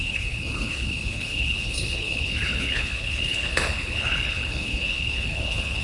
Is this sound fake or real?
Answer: fake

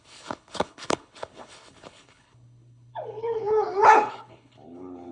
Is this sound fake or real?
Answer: fake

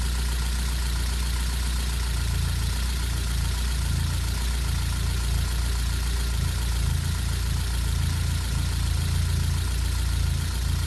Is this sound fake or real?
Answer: real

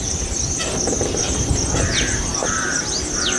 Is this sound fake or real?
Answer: real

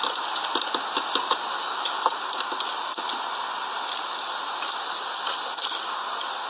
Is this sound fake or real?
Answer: real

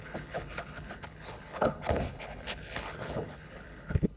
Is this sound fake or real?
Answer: fake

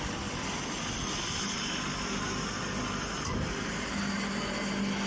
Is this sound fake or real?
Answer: real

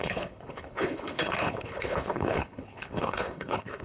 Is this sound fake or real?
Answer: fake